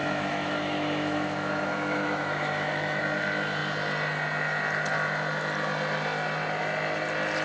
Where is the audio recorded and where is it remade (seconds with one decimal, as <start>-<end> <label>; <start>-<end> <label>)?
0.0-3.0 remade; 3.0-7.4 recorded